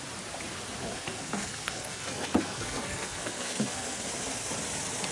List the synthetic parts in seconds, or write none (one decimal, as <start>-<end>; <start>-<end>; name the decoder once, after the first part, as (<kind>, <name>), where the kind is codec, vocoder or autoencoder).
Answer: 0.9-4.0 (codec, SNAC)